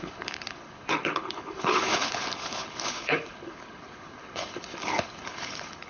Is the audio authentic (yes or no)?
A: no